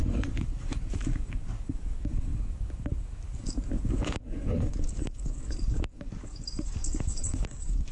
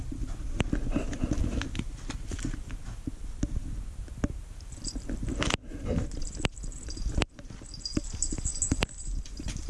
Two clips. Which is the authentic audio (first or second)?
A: second